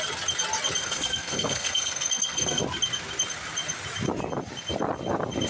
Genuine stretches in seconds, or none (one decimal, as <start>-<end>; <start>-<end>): 0.0-0.8; 2.6-5.5